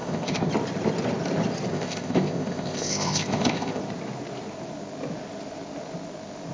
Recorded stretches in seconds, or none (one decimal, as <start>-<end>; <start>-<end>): 0.5-1.7; 3.8-6.5